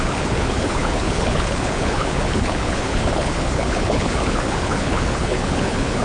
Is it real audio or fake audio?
fake